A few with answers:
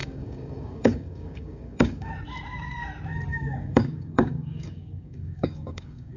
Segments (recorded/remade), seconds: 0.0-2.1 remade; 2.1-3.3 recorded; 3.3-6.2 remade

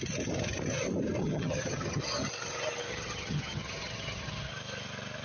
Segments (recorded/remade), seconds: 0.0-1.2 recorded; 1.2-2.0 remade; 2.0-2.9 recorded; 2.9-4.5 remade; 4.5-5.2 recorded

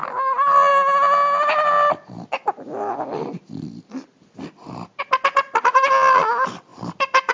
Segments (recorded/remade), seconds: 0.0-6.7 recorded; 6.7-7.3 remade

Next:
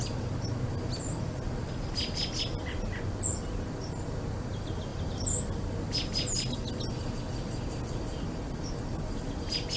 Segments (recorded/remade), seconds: 0.0-9.8 recorded

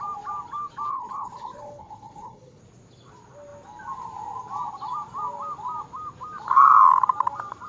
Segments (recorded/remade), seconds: 0.0-0.9 recorded; 0.9-2.6 remade; 2.6-7.7 recorded